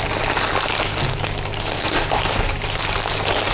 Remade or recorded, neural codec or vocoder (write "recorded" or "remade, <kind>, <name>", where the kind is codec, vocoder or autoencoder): recorded